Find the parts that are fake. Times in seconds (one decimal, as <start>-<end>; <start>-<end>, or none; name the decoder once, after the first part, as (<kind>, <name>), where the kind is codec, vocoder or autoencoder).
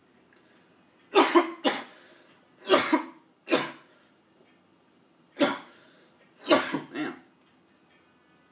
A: none